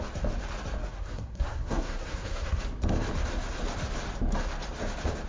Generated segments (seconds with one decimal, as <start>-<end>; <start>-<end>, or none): 0.8-2.6